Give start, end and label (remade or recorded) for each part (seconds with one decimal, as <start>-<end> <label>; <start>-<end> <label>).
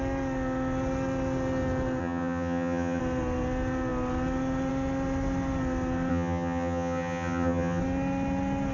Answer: 0.0-2.0 recorded; 2.0-3.0 remade; 3.0-6.1 recorded; 6.1-7.8 remade; 7.8-8.7 recorded